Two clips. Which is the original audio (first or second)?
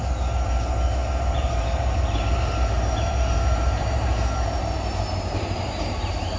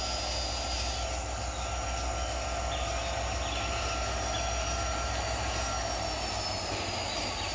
second